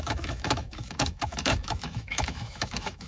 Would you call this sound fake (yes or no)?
yes